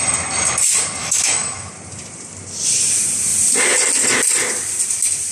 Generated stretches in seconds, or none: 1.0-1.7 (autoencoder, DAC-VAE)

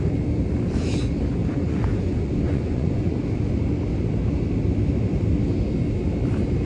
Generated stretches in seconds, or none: 1.5-3.2 (vocoder, Vocos)

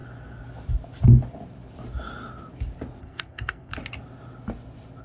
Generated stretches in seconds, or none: 3.0-3.7 (codec, SNAC)

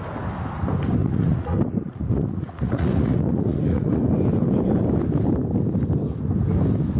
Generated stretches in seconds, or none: 1.0-4.0 (vocoder, Vocos)

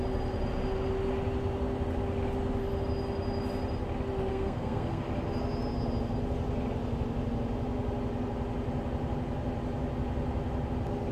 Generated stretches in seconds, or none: 4.3-5.0 (codec, SNAC)